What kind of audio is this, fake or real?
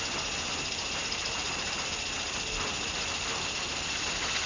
real